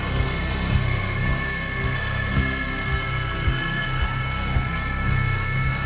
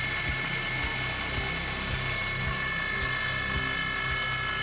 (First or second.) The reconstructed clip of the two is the first